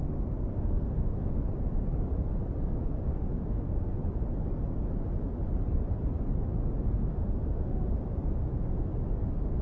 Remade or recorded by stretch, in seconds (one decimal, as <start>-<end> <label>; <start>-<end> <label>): 0.0-1.4 remade; 1.4-3.1 recorded; 3.1-4.0 remade; 4.0-7.0 recorded; 7.0-8.0 remade; 8.0-9.6 recorded